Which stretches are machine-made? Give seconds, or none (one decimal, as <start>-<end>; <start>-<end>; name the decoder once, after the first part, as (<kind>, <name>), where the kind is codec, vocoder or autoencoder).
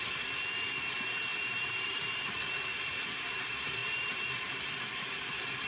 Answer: 1.3-2.3 (vocoder, BigVGAN v2); 2.7-3.4; 3.8-4.6; 5.0-5.7